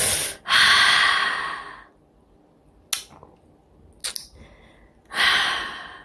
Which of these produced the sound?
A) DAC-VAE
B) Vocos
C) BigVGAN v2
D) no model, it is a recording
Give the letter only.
D